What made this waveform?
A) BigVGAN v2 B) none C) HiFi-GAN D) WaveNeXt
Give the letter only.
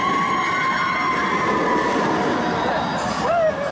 B